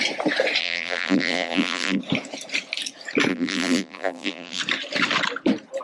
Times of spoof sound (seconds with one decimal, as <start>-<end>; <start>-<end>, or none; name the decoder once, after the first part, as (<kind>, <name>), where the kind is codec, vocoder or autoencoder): 0.6-2.0 (vocoder, BigVGAN v2); 3.3-4.6